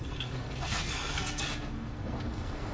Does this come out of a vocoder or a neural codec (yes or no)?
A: yes